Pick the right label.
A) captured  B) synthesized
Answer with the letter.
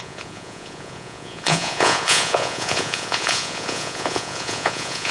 B